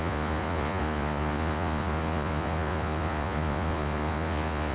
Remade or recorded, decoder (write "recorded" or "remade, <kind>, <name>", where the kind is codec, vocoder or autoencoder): remade, vocoder, Vocos